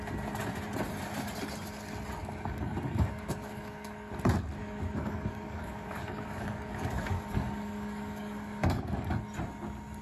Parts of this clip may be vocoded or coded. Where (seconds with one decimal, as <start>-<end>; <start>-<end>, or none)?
2.2-4.1; 4.6-9.1